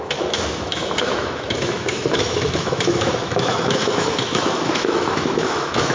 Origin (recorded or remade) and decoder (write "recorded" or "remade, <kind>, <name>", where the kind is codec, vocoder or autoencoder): remade, autoencoder, DAC-VAE